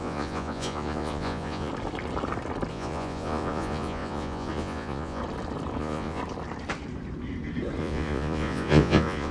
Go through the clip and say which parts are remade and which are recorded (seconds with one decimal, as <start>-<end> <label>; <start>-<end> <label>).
0.0-1.7 remade; 1.7-2.7 recorded; 2.7-5.2 remade; 5.2-5.8 recorded; 5.8-6.2 remade; 6.2-7.8 recorded; 7.8-9.3 remade